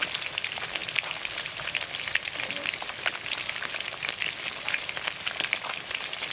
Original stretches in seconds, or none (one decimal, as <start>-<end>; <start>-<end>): 0.0-6.3